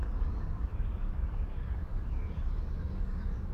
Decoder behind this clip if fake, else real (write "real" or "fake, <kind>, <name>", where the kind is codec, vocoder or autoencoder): fake, codec, DAC